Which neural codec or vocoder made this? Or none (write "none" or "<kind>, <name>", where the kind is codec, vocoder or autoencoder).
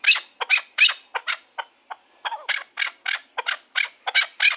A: none